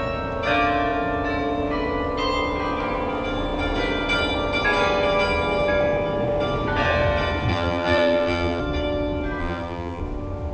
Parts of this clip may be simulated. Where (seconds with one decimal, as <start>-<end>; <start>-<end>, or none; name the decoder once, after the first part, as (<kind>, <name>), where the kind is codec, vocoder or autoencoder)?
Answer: 7.5-8.6 (vocoder, BigVGAN v2); 9.4-10.0